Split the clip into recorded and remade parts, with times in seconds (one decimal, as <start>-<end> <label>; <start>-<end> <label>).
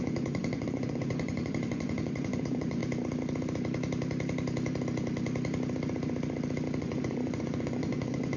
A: 0.0-2.8 remade; 2.8-6.8 recorded; 6.8-8.4 remade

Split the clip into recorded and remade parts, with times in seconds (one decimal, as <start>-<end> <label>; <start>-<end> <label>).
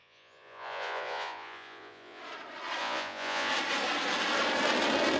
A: 0.0-2.2 remade; 2.2-2.8 recorded; 2.8-3.5 remade; 3.5-5.2 recorded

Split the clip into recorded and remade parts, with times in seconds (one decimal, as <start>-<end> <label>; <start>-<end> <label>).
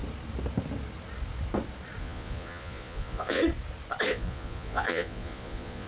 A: 0.0-2.0 recorded; 2.0-3.4 remade; 3.4-4.1 recorded; 4.1-5.9 remade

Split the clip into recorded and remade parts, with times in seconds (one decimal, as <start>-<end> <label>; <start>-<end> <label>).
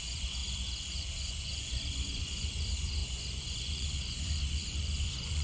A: 0.0-0.4 remade; 0.4-0.9 recorded; 0.9-5.4 remade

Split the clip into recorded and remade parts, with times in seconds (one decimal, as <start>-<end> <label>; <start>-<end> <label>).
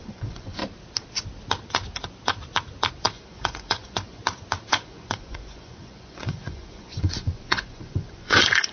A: 0.0-0.6 remade; 0.6-2.9 recorded; 2.9-4.2 remade; 4.2-4.7 recorded; 4.7-8.7 remade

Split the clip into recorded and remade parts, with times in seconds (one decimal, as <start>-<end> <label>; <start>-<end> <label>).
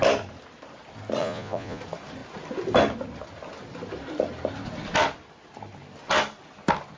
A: 0.0-1.2 recorded; 1.2-1.8 remade; 1.8-7.0 recorded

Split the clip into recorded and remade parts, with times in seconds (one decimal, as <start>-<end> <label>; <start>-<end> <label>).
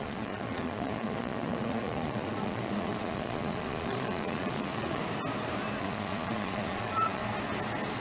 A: 0.0-5.0 remade; 5.0-5.8 recorded; 5.8-7.2 remade; 7.2-8.0 recorded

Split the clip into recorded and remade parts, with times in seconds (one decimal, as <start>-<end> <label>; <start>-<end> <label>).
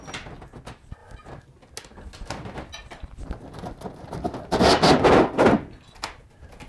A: 0.0-6.7 recorded